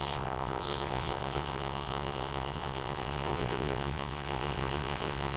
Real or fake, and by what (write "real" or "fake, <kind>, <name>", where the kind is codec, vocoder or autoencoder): fake, vocoder, WaveNeXt